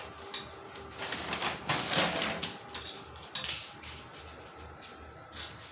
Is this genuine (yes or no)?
yes